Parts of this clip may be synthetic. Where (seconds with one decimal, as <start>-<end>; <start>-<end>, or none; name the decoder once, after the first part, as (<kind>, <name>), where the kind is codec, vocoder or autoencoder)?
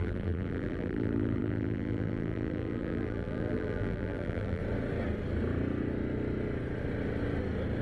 0.0-4.6 (vocoder, BigVGAN v2)